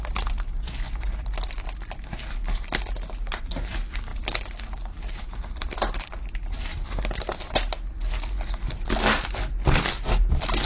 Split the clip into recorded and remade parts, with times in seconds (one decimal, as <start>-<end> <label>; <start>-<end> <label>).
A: 0.0-10.7 recorded